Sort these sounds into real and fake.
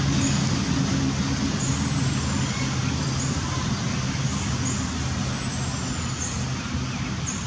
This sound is real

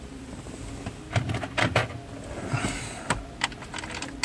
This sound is real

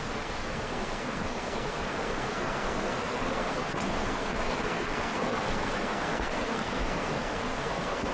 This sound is fake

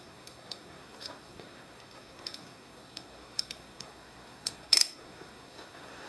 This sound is fake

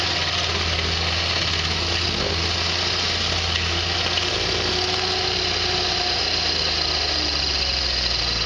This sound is real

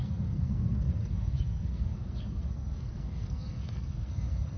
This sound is fake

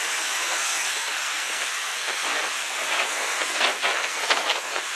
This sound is fake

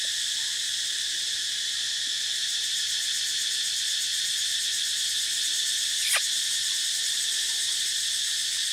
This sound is real